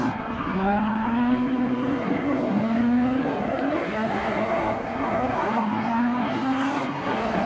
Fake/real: fake